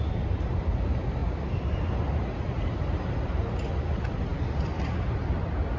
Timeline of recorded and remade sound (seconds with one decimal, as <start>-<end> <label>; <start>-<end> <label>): 0.0-5.8 recorded